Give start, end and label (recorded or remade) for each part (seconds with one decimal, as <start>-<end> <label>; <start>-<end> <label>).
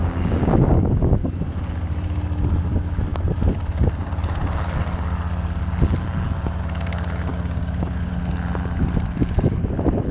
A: 0.0-1.0 remade; 1.0-7.3 recorded; 7.3-8.1 remade; 8.1-10.1 recorded